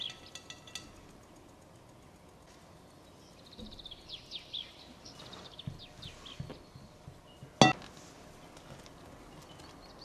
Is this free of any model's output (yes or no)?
yes